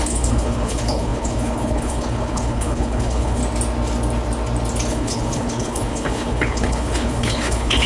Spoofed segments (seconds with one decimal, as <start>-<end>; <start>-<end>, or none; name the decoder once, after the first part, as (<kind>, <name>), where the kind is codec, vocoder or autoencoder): 0.0-3.4 (codec, HILCodec); 4.9-7.9